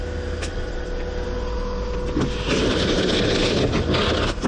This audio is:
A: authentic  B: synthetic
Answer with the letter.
A